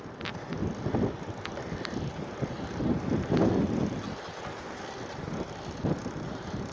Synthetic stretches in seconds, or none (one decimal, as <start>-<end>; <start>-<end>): none